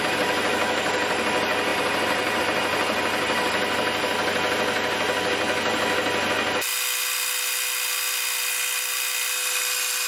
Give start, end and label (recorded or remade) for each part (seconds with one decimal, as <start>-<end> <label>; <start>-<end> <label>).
0.0-10.1 recorded